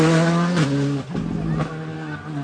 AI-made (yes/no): no